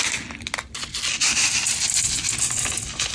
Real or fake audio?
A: real